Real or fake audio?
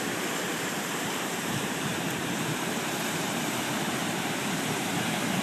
fake